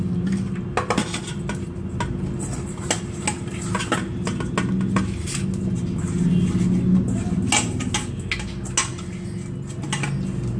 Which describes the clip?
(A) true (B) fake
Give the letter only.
A